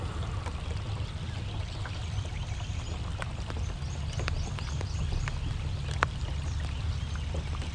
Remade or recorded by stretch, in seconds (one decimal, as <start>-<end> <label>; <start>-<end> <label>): 0.0-7.7 recorded